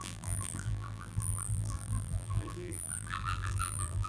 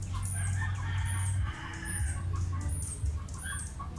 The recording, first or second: second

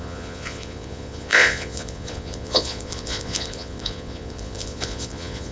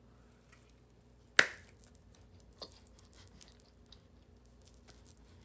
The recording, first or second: second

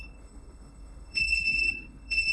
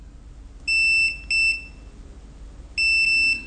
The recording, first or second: second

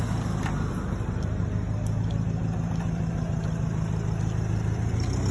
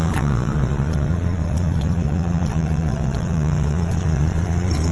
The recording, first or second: first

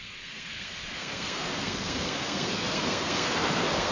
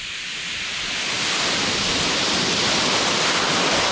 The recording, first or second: second